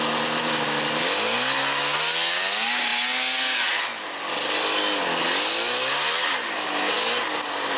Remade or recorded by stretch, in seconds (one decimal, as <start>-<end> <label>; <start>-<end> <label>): 0.0-7.8 recorded